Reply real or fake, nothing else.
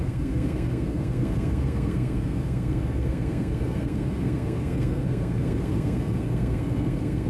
fake